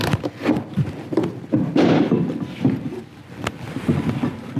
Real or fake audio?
real